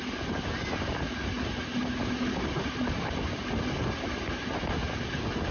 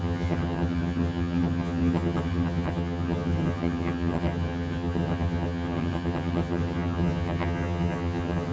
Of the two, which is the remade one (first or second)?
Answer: second